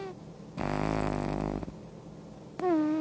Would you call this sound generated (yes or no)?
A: no